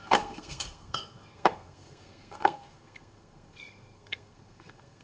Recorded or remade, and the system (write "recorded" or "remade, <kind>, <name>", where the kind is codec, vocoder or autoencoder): remade, codec, SNAC